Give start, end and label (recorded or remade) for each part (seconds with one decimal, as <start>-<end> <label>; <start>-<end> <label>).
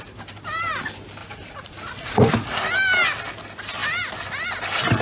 0.0-1.2 recorded; 1.2-2.3 remade; 2.3-5.0 recorded